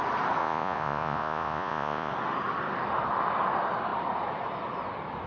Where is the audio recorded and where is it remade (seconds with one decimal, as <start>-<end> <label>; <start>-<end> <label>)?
0.0-0.4 recorded; 0.4-2.1 remade; 2.1-5.3 recorded